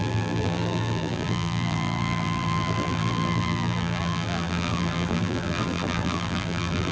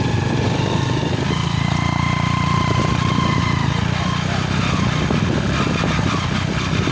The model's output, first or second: first